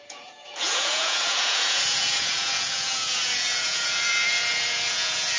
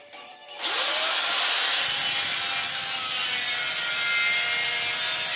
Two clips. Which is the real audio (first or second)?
second